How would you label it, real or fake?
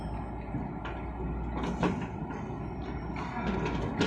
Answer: real